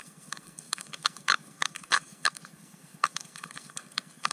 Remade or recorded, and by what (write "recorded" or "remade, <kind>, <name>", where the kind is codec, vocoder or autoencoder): remade, codec, SNAC